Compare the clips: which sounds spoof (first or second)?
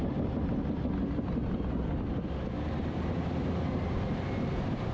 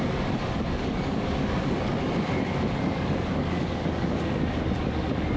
second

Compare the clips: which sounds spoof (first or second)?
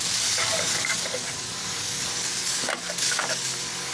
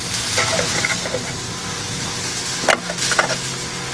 first